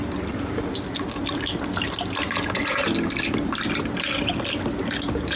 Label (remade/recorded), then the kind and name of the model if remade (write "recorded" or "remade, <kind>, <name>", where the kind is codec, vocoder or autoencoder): recorded